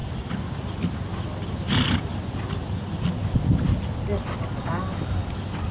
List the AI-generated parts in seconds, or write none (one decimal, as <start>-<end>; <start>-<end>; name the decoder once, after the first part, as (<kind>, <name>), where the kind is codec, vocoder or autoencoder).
0.0-0.6 (vocoder, BigVGAN v2); 2.6-3.4